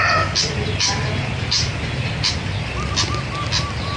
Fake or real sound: real